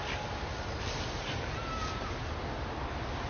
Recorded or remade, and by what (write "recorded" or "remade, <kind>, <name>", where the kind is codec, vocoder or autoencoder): recorded